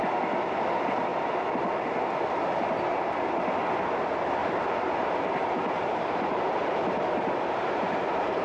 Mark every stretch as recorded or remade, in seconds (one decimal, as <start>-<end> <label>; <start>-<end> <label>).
0.0-4.4 recorded; 4.4-8.4 remade